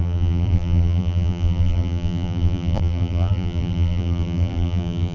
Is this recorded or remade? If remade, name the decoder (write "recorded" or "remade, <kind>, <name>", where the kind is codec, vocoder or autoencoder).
remade, vocoder, BigVGAN v2